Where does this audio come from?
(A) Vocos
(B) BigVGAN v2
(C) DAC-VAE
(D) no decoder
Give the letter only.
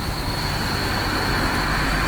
D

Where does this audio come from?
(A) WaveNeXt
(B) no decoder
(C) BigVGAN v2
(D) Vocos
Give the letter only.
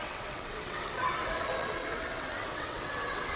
A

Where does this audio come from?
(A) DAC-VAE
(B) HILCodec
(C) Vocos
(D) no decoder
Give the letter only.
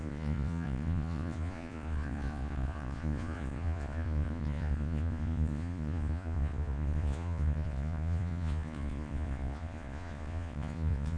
C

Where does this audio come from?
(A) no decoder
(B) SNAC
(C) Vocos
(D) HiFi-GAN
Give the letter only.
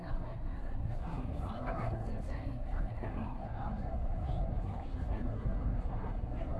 B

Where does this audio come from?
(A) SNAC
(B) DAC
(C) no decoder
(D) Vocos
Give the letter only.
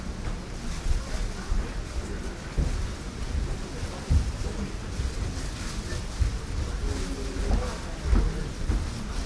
C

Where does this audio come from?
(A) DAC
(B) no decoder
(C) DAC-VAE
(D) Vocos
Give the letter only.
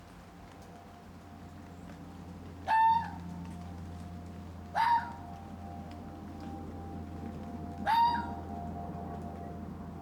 B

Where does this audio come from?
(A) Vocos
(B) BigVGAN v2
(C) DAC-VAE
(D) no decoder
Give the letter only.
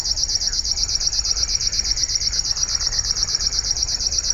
D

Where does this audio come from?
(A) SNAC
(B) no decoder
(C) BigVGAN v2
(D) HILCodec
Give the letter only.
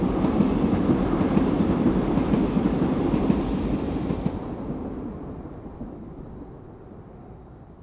B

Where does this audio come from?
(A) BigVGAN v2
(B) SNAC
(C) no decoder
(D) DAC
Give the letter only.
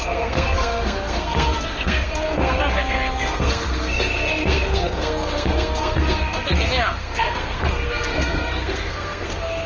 B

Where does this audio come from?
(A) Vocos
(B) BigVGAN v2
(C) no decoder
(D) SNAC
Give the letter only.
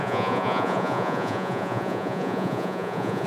A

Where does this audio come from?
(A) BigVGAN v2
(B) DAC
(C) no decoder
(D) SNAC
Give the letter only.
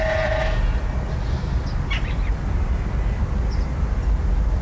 C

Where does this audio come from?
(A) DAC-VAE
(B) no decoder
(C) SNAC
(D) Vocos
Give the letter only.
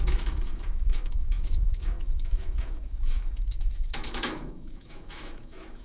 A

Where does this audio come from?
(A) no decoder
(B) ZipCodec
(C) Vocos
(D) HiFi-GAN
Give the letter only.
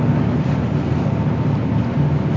A